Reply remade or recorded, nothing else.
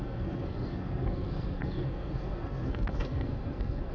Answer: remade